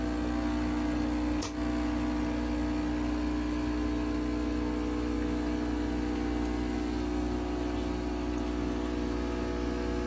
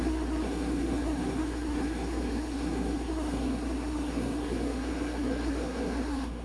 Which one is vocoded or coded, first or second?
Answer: second